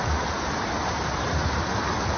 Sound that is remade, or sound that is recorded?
recorded